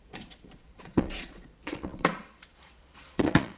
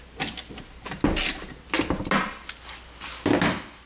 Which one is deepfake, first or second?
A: first